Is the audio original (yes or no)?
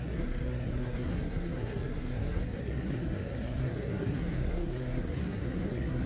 no